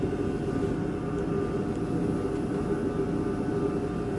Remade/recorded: recorded